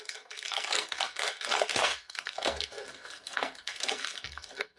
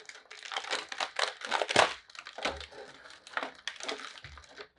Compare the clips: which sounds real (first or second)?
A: second